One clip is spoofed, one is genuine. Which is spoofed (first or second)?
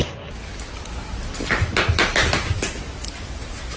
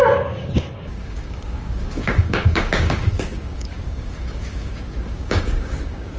second